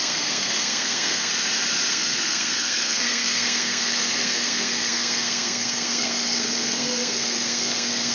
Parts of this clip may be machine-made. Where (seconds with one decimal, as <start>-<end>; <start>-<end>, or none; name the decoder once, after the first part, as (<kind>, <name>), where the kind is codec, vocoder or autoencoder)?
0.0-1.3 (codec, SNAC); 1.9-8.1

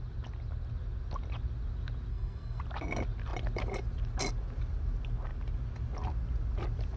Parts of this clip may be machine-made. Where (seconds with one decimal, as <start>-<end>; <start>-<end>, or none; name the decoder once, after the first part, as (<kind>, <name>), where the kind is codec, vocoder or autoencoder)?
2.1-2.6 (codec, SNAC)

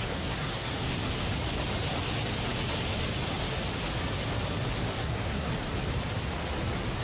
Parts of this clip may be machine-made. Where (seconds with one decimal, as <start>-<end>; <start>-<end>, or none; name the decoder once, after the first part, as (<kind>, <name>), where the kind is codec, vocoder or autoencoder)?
0.0-0.7 (codec, SNAC); 4.9-5.5